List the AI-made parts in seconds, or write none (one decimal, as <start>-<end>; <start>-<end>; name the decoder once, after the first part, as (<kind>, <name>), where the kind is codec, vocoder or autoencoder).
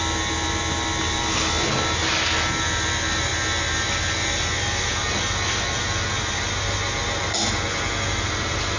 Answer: none